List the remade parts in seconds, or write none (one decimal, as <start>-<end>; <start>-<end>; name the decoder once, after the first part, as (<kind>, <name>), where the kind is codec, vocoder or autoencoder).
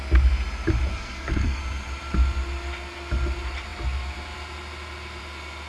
0.9-1.6 (codec, SNAC)